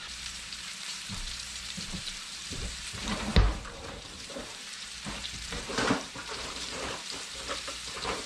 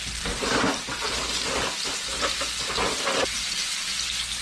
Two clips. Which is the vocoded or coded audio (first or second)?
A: first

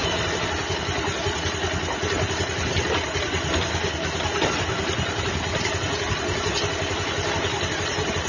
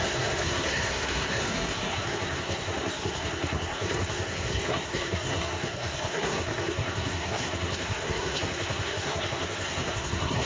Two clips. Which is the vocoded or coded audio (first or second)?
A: second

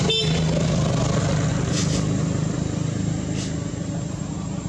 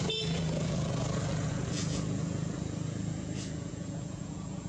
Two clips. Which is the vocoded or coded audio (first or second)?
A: second